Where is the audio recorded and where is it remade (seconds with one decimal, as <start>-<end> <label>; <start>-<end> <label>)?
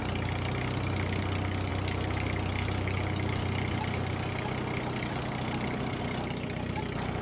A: 0.0-7.2 recorded